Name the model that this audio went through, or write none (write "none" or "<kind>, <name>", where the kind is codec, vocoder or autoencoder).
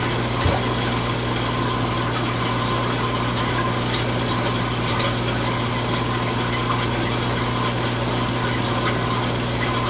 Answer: none